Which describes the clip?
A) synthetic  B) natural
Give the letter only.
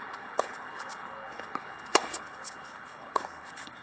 A